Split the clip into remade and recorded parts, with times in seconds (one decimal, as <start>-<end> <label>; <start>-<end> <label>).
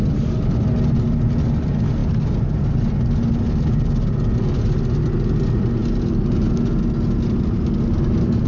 0.0-8.5 recorded